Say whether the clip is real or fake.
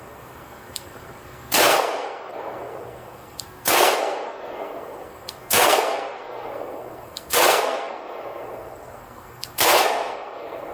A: fake